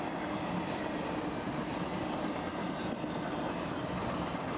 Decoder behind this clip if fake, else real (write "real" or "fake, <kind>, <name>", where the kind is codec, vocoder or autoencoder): real